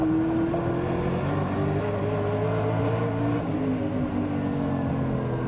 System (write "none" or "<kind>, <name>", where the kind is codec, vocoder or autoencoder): none